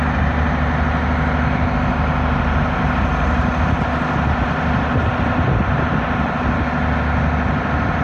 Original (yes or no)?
yes